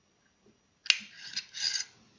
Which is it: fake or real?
real